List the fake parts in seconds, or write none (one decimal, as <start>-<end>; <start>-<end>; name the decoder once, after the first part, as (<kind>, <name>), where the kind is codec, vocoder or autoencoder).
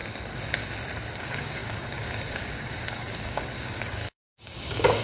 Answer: 1.2-5.0 (codec, DAC)